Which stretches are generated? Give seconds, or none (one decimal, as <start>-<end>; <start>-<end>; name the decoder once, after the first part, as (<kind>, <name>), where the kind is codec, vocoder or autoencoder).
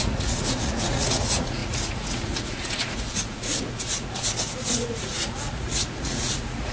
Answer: 0.0-6.7 (vocoder, Vocos)